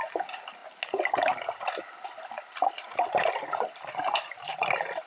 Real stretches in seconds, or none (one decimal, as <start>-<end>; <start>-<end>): 0.0-5.1